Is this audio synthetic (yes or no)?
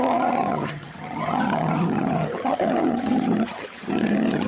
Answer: yes